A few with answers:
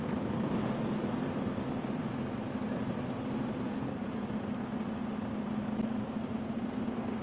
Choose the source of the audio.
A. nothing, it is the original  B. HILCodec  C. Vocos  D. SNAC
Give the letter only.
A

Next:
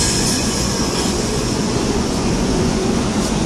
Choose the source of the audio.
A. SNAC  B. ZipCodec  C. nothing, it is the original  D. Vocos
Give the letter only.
D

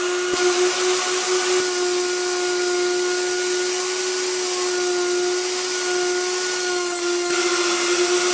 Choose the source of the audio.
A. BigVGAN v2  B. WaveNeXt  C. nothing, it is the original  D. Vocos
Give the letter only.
C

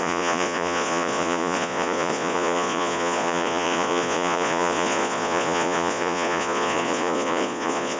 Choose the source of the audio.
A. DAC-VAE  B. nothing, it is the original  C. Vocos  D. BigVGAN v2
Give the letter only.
C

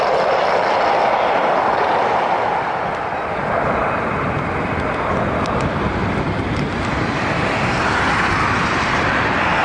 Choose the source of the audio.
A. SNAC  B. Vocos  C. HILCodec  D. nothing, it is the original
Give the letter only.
D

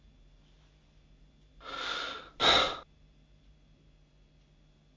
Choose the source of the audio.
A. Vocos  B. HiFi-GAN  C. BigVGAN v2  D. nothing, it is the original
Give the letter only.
D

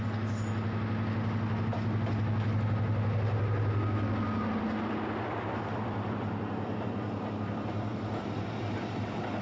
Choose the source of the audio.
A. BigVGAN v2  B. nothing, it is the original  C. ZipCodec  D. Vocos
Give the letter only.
B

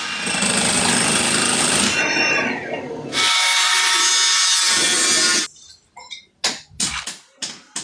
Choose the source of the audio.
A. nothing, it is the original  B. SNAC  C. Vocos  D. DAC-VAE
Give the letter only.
A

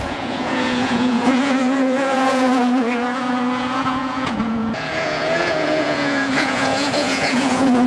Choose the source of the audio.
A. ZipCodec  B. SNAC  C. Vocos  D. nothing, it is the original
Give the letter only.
C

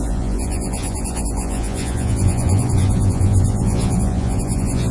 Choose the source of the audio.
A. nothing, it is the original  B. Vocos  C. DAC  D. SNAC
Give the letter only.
B